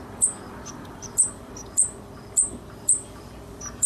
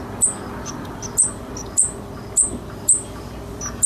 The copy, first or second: first